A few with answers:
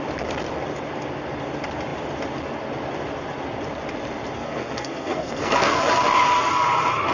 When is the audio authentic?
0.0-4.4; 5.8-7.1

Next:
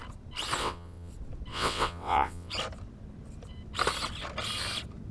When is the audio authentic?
0.0-0.6; 1.1-1.5; 2.5-5.1

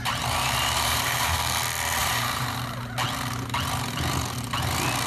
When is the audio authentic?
1.4-2.0; 2.6-5.1